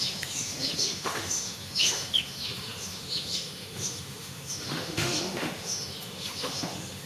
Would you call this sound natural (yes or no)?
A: no